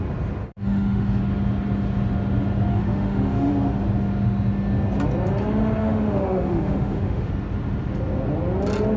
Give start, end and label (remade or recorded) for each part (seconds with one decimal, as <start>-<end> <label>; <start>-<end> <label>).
0.0-0.4 recorded; 0.4-1.2 remade; 1.2-2.7 recorded; 2.7-3.5 remade; 3.5-5.8 recorded; 5.8-7.3 remade; 7.3-9.0 recorded